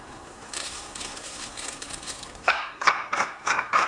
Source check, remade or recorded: remade